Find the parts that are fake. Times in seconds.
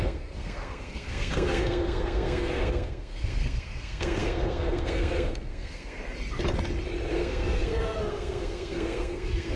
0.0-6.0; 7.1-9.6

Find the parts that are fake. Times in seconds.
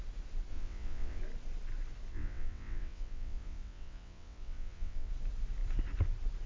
0.5-1.2; 2.1-5.1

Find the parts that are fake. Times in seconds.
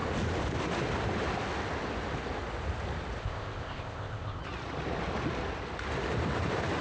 3.2-4.4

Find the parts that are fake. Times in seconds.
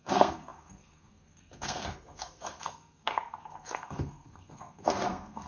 0.0-5.5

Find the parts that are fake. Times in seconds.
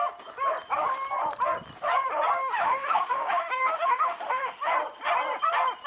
2.4-4.7